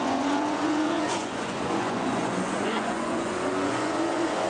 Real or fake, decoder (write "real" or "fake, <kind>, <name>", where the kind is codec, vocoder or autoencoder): fake, vocoder, Vocos